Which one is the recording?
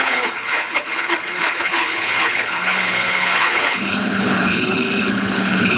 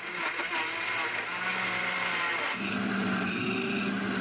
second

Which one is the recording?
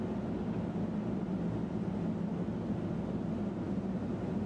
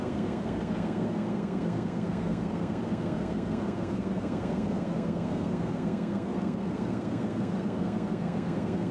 first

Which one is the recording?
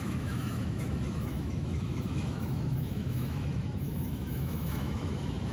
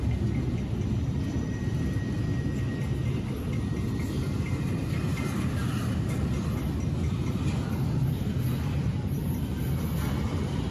second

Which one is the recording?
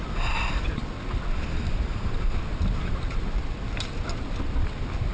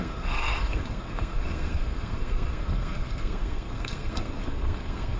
first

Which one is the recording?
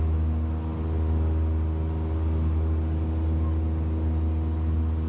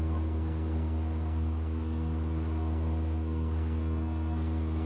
first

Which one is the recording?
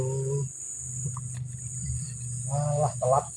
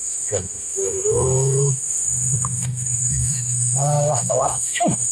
first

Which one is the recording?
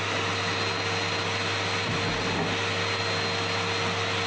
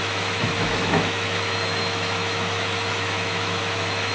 first